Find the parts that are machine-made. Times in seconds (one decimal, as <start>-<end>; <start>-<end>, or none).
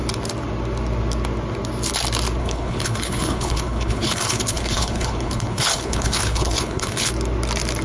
2.4-7.1